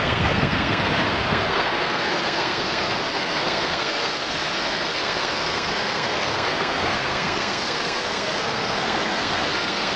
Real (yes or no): no